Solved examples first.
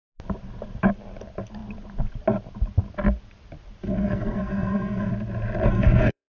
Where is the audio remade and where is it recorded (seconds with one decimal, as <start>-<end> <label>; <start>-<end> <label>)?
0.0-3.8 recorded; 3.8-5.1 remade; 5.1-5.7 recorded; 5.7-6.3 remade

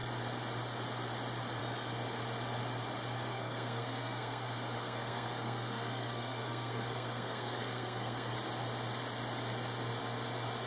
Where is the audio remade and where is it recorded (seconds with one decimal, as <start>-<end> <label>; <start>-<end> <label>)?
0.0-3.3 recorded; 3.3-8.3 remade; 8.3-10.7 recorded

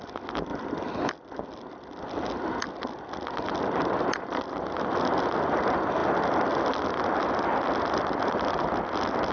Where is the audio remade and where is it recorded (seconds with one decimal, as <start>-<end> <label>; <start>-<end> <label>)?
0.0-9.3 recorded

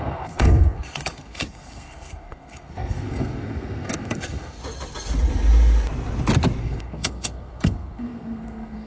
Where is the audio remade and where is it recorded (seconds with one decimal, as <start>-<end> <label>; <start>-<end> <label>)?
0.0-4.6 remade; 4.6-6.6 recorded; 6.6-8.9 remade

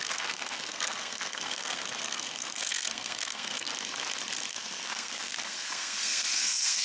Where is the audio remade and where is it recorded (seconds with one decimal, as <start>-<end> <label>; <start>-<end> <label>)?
0.0-3.7 remade; 3.7-4.5 recorded; 4.5-6.8 remade

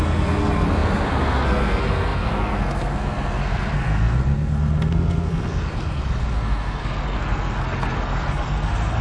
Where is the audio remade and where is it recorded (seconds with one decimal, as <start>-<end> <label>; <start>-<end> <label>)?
0.0-9.0 remade

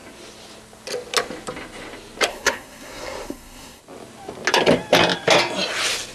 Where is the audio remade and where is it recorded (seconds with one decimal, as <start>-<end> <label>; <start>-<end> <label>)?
0.0-2.3 recorded; 2.3-3.8 remade; 3.8-6.1 recorded